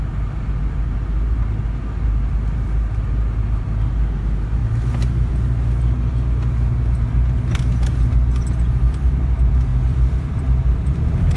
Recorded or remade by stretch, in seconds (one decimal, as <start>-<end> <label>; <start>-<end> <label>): 0.0-9.7 recorded; 9.7-11.4 remade